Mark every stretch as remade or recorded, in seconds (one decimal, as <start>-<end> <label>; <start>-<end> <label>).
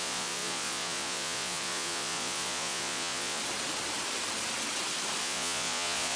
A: 0.0-3.4 remade; 3.4-5.2 recorded; 5.2-6.2 remade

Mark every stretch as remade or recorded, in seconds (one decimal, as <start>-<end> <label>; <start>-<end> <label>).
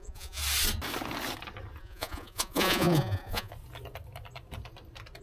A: 0.0-0.4 remade; 0.4-1.8 recorded; 1.8-3.5 remade; 3.5-5.2 recorded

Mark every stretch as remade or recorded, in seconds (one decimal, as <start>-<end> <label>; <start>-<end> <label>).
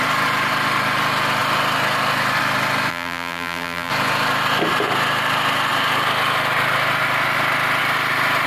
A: 0.0-2.9 recorded; 2.9-3.9 remade; 3.9-8.5 recorded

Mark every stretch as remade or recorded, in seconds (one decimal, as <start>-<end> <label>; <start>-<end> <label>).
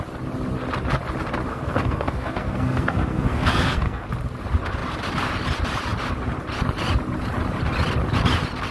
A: 0.0-1.5 recorded; 1.5-4.1 remade; 4.1-8.7 recorded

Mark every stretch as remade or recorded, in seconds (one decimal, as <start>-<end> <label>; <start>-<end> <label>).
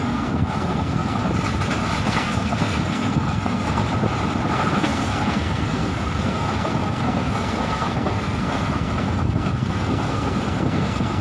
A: 0.0-1.2 remade; 1.2-2.0 recorded; 2.0-3.8 remade; 3.8-4.5 recorded; 4.5-11.2 remade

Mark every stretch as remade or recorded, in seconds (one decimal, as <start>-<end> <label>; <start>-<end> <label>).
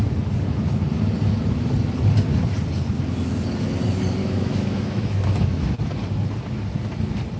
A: 0.0-4.2 recorded; 4.2-5.7 remade; 5.7-7.4 recorded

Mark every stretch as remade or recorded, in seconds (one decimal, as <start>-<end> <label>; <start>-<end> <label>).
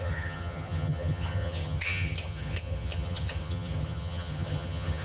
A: 0.0-5.0 remade